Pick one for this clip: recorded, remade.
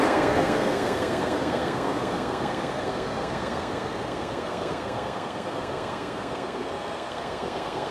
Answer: remade